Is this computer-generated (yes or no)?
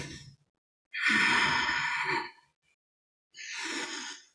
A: no